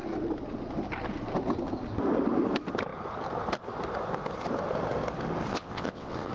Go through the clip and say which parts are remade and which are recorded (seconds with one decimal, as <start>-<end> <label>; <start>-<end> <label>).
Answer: 0.0-5.5 recorded; 5.5-6.3 remade

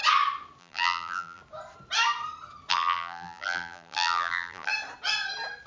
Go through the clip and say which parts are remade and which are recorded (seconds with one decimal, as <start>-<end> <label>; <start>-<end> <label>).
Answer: 0.0-0.6 recorded; 0.6-1.4 remade; 1.4-2.7 recorded; 2.7-4.7 remade; 4.7-5.7 recorded